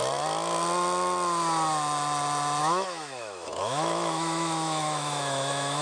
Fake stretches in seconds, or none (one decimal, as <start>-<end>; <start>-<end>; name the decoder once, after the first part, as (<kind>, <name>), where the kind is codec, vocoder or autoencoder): 2.6-5.8 (autoencoder, DAC-VAE)